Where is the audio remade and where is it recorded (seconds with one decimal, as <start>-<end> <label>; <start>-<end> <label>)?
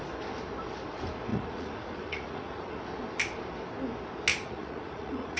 0.0-1.3 recorded; 1.3-2.8 remade; 2.8-4.3 recorded; 4.3-5.4 remade